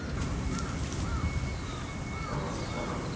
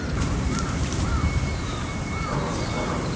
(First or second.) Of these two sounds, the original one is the first